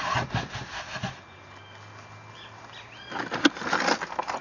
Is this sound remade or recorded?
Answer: recorded